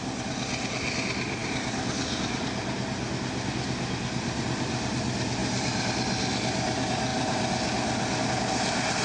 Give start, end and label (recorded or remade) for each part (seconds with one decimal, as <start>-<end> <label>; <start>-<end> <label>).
0.0-9.0 recorded